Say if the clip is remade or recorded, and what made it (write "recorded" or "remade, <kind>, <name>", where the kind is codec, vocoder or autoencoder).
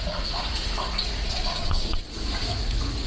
remade, vocoder, Vocos